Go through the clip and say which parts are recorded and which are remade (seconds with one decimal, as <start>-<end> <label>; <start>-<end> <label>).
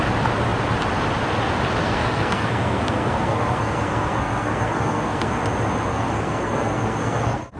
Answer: 0.0-1.8 recorded; 1.8-5.4 remade; 5.4-5.9 recorded; 5.9-7.6 remade